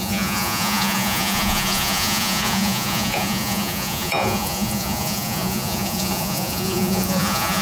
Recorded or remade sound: remade